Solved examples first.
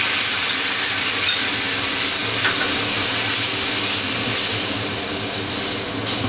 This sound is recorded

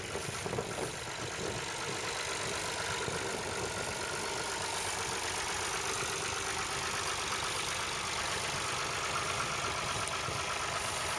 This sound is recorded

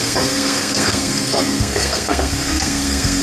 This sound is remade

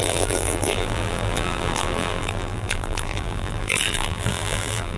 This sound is remade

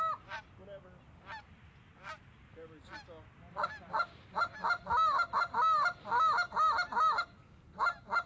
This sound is recorded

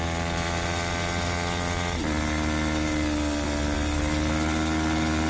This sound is recorded